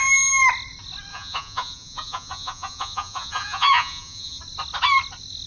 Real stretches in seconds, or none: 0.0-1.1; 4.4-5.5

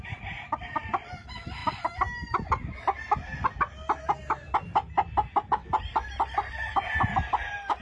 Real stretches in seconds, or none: 0.0-7.8